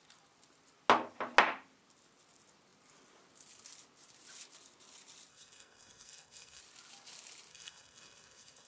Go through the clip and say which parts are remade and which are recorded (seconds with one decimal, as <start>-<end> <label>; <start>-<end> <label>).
0.0-5.3 recorded; 5.3-6.6 remade; 6.6-7.5 recorded; 7.5-8.7 remade